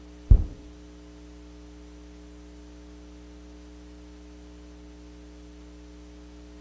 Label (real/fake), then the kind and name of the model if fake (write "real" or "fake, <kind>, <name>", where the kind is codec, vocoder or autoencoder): real